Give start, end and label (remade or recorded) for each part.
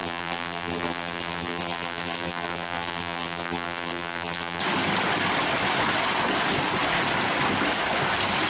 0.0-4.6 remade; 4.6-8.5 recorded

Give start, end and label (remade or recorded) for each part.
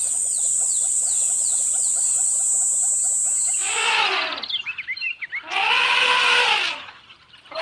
0.0-2.3 remade; 2.3-7.6 recorded